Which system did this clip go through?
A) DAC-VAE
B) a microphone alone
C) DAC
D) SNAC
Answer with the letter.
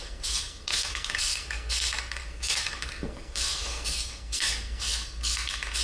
D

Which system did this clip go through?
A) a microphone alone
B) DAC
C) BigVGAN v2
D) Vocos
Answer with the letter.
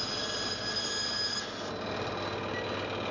A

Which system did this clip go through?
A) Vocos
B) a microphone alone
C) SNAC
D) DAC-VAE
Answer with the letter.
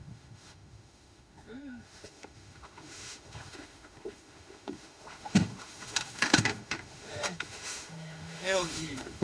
D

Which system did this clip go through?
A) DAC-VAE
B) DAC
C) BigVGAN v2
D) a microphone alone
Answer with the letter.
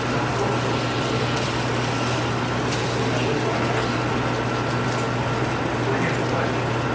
D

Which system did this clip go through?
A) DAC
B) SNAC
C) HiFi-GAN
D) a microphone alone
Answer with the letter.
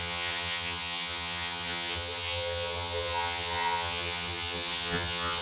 C